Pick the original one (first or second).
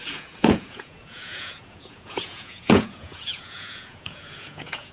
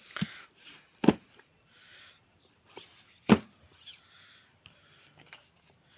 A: second